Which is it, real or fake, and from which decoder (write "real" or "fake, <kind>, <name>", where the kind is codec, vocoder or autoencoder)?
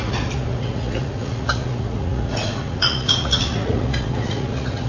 fake, vocoder, Vocos